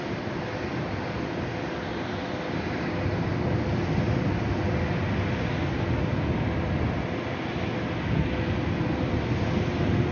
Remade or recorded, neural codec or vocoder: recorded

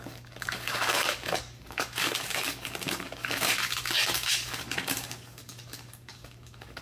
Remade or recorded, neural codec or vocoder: remade, codec, DAC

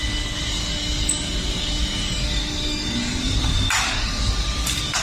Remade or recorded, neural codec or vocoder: remade, codec, DAC